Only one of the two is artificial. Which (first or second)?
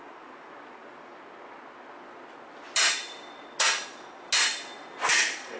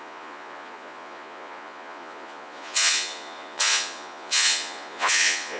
second